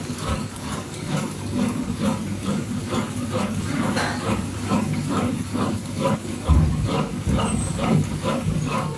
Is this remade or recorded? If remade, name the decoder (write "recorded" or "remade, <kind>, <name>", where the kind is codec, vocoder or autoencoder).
remade, codec, DAC